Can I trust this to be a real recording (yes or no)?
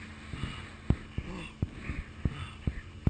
yes